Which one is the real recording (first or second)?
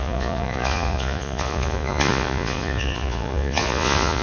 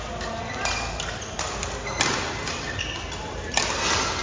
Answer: second